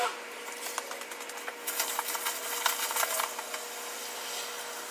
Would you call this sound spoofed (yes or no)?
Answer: no